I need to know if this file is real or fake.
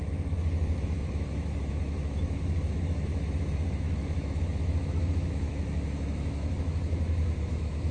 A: fake